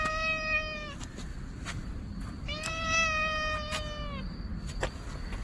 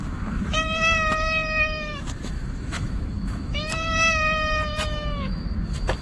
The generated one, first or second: second